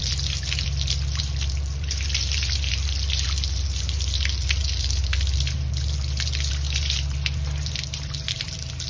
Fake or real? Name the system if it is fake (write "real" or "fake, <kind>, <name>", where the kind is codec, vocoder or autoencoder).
real